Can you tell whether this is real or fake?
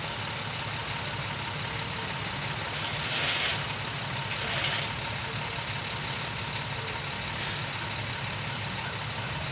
real